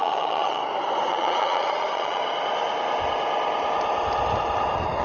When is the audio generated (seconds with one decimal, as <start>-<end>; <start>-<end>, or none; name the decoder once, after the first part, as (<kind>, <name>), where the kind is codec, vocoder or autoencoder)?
0.0-0.6 (vocoder, Vocos); 1.1-2.2